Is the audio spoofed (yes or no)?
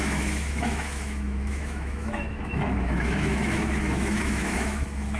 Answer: yes